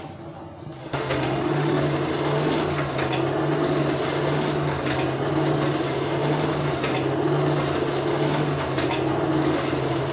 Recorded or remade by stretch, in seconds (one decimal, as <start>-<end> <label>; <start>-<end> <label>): 0.0-0.8 recorded; 0.8-1.8 remade; 1.8-10.1 recorded

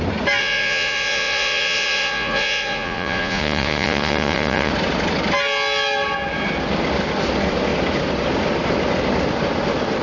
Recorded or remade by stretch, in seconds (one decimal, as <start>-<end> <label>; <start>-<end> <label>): 0.0-0.4 recorded; 0.4-4.7 remade; 4.7-10.0 recorded

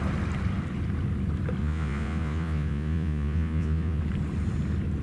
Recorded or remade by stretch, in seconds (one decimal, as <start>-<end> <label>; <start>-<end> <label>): 0.0-1.6 recorded; 1.6-4.0 remade; 4.0-5.0 recorded